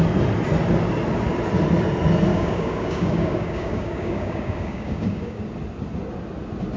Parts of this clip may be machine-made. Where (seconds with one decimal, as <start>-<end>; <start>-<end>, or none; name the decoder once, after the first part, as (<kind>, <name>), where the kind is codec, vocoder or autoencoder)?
2.3-5.4 (codec, DAC)

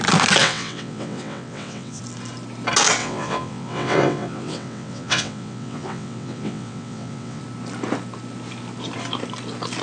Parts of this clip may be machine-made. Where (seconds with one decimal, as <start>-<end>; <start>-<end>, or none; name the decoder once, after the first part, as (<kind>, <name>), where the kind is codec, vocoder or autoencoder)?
0.4-2.0 (vocoder, WaveNeXt); 3.0-7.4

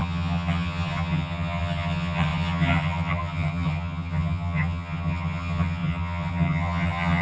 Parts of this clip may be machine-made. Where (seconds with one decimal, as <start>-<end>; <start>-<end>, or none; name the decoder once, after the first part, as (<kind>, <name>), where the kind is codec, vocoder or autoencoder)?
0.0-7.2 (vocoder, HiFi-GAN)

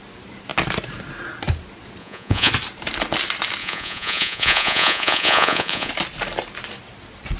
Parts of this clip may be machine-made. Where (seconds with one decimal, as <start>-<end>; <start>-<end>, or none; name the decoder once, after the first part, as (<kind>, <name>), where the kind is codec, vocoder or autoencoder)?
2.0-2.5 (vocoder, Vocos); 3.6-5.9